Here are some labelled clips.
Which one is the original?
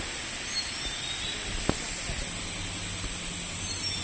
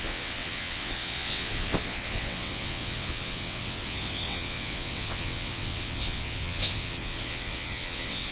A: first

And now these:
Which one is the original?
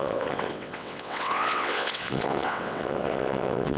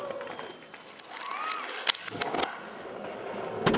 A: second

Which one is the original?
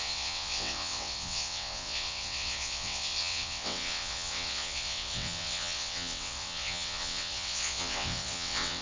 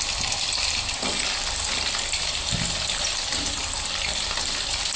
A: second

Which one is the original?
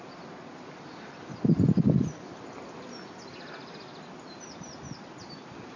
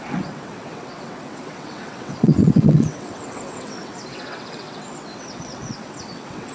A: first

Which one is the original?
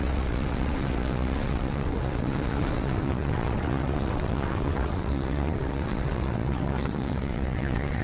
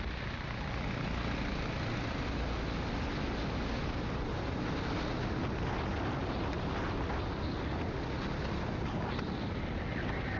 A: second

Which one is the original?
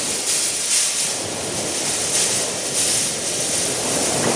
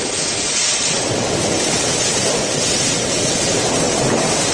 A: first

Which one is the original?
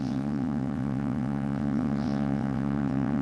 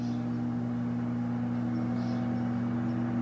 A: second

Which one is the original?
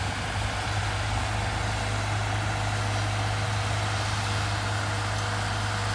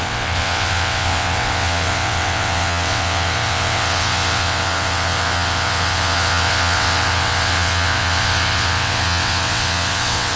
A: first